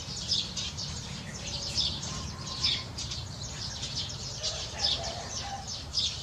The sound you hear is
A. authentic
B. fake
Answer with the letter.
B